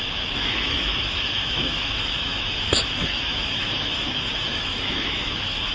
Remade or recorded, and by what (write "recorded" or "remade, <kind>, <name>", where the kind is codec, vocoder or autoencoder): remade, autoencoder, DAC-VAE